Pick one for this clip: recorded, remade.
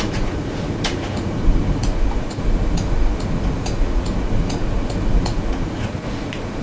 remade